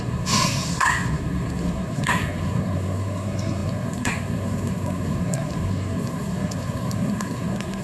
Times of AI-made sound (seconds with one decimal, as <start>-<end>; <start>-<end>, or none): 0.0-7.8